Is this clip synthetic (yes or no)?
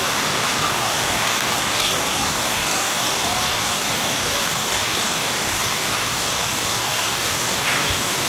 yes